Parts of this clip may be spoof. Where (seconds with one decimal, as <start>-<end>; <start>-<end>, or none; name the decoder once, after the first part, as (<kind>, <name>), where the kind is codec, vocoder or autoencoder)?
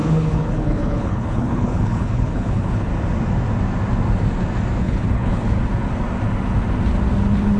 0.0-2.9 (codec, HILCodec); 4.8-5.4